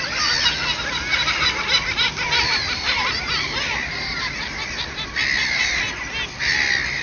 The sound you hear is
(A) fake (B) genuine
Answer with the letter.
B